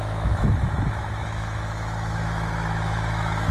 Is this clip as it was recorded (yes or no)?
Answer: no